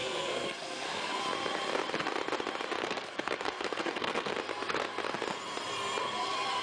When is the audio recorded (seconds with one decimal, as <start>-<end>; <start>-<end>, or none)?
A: 1.2-2.8; 4.3-6.6